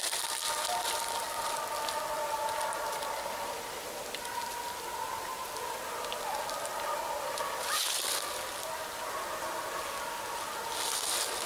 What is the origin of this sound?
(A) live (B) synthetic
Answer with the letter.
A